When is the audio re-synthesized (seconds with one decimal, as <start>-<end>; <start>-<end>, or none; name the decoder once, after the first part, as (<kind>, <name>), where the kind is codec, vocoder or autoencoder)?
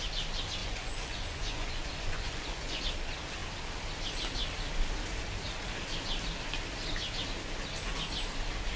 0.6-2.8 (vocoder, Vocos)